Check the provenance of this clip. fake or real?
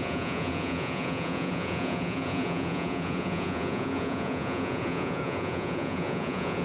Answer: fake